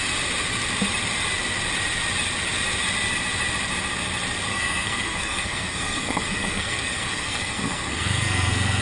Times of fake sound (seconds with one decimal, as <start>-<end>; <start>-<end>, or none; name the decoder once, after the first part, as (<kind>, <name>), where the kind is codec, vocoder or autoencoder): 4.5-8.8 (codec, SNAC)

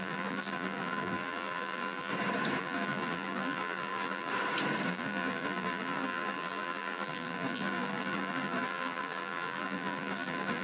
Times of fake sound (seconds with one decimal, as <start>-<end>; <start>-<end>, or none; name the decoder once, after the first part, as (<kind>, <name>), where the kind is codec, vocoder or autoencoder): 0.0-2.1 (vocoder, BigVGAN v2); 2.6-4.3; 4.9-10.6

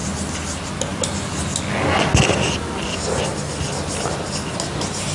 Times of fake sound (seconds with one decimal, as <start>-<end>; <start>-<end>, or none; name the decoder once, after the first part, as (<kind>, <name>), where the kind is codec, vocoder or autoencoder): none

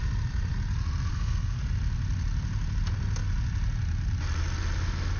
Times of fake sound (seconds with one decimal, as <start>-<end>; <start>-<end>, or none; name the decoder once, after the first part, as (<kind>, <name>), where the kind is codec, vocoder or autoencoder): 1.1-1.6 (codec, SNAC)